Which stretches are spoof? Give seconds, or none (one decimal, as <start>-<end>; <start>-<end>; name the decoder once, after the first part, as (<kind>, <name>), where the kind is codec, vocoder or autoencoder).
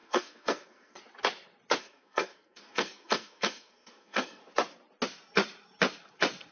0.0-1.0 (codec, SNAC); 1.8-4.4